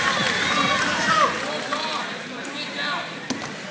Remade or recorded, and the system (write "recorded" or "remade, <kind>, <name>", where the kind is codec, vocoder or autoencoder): recorded